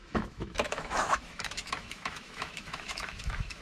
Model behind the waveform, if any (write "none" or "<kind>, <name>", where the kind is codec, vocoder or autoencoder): autoencoder, DAC-VAE